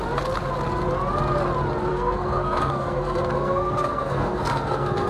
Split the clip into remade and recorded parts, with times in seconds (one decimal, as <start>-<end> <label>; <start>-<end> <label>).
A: 0.0-1.9 recorded; 1.9-5.1 remade